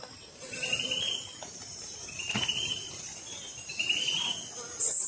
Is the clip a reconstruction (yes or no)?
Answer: no